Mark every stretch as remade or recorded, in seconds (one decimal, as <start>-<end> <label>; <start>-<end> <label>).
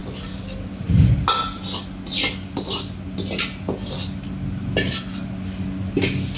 0.0-6.4 recorded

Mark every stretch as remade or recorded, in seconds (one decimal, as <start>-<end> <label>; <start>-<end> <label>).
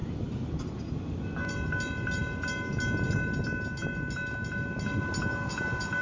0.0-6.0 recorded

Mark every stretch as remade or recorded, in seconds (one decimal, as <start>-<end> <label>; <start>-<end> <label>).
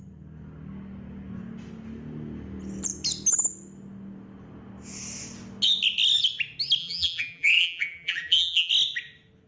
0.0-6.8 recorded; 6.8-8.7 remade; 8.7-9.5 recorded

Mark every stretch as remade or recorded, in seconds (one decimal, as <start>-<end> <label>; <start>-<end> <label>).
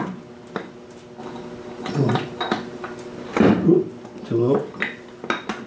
0.0-5.7 recorded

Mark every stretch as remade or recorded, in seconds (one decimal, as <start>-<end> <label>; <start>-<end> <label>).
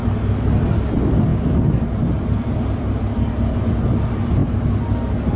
0.0-5.4 recorded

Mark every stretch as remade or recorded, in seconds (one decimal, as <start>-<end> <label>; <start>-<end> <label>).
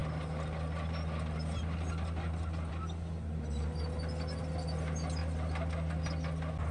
0.0-6.7 recorded